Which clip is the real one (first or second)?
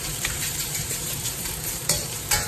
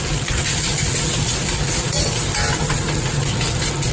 second